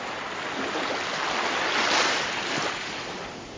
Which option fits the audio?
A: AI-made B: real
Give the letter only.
B